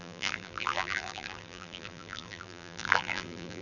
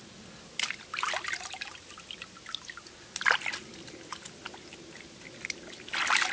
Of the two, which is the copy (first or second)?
first